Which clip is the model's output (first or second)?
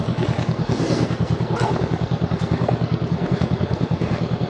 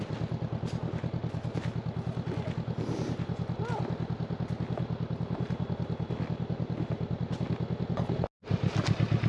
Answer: first